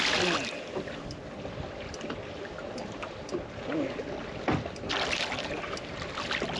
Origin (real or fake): real